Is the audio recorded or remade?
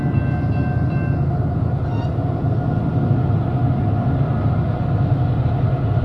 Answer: recorded